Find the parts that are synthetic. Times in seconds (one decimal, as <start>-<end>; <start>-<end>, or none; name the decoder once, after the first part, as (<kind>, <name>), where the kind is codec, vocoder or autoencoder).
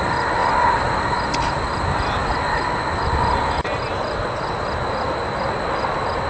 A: none